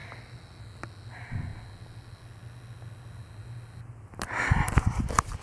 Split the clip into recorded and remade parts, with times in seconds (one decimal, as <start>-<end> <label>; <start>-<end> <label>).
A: 0.0-5.4 recorded